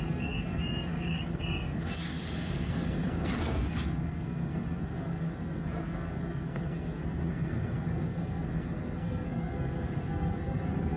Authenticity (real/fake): fake